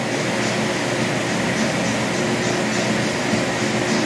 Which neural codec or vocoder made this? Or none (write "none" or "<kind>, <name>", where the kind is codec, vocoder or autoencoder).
none